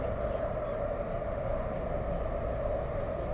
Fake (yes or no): no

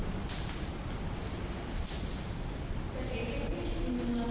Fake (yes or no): no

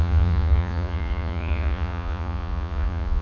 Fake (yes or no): yes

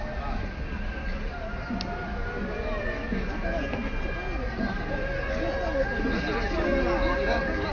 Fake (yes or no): no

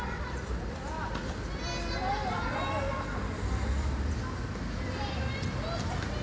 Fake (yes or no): no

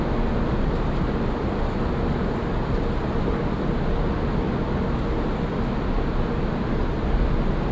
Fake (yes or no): no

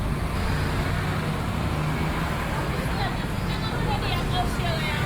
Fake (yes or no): no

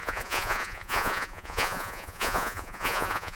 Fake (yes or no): yes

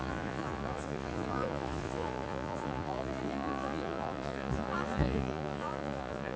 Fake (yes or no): yes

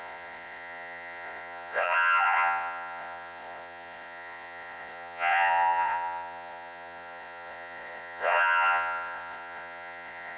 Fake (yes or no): yes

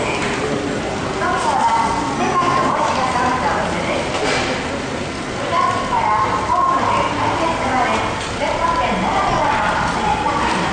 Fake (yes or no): no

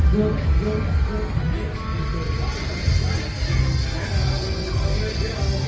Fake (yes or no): no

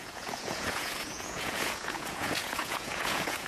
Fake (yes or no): yes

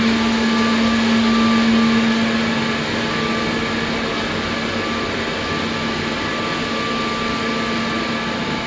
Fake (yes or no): no